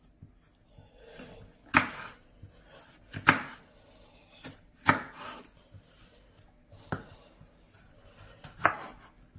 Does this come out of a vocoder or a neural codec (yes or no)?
no